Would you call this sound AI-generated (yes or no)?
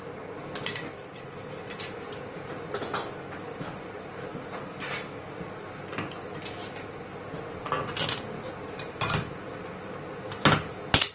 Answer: no